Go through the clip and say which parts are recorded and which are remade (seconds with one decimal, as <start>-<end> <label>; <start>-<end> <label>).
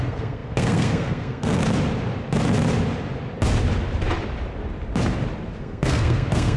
0.0-1.6 remade; 1.6-5.6 recorded; 5.6-6.6 remade